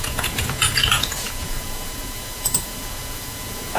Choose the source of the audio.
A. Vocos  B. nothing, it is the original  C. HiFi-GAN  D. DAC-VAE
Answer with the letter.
A